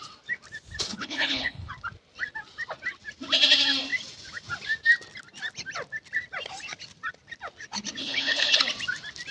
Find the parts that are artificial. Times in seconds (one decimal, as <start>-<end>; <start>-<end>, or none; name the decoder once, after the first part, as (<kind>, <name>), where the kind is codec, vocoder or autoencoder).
0.9-1.7 (codec, HILCodec); 8.0-8.6